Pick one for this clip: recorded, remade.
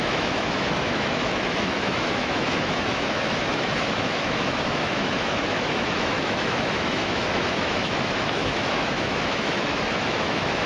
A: remade